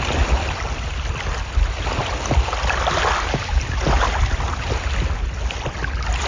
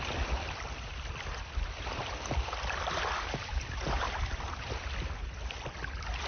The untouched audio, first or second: first